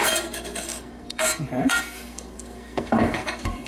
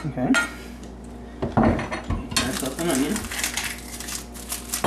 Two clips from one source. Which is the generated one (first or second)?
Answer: first